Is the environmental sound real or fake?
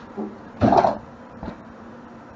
fake